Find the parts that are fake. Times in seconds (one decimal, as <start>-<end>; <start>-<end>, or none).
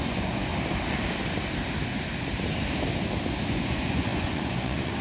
0.0-0.5; 3.5-5.0